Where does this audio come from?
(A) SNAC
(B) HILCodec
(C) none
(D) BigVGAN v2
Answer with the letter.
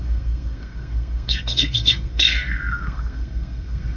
A